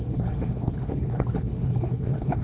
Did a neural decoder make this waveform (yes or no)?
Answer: yes